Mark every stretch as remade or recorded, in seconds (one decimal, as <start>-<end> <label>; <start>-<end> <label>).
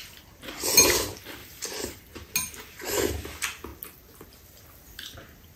0.0-1.4 recorded; 1.4-2.1 remade; 2.1-5.6 recorded